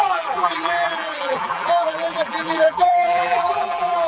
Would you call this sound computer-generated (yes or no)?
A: yes